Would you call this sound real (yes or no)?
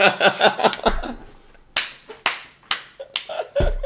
yes